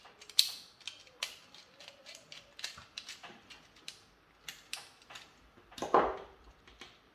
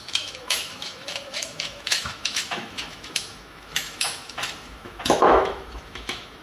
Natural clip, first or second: first